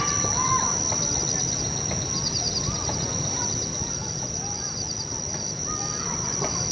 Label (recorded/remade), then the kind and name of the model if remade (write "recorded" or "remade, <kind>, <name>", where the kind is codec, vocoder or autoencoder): recorded